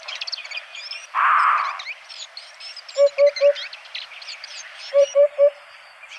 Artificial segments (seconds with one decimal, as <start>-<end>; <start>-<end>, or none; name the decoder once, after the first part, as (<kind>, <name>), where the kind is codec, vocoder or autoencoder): 0.0-0.7 (vocoder, BigVGAN v2); 4.4-6.2